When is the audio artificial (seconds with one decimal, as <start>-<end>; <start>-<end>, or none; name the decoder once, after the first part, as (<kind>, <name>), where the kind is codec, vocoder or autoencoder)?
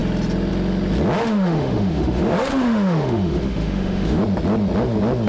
1.2-4.2 (autoencoder, DAC-VAE)